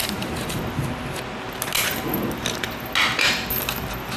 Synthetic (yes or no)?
no